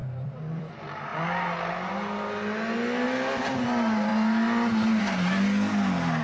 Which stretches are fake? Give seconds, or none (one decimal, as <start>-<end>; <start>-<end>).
0.0-0.7